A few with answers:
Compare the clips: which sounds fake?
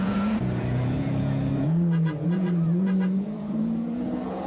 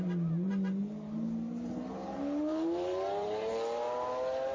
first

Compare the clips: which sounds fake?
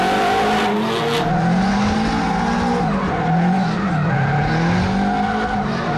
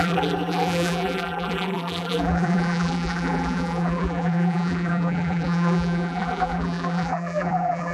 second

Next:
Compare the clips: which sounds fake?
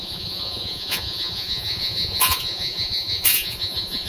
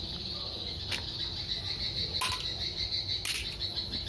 first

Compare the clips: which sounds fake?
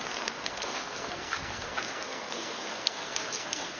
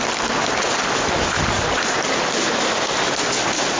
first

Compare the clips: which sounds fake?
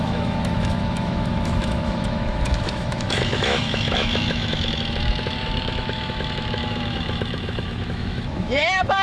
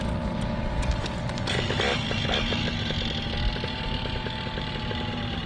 first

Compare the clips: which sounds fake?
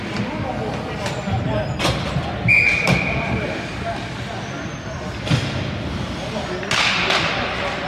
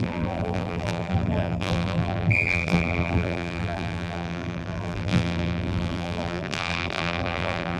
second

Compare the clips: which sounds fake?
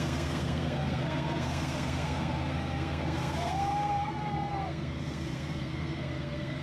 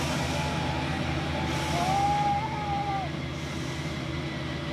first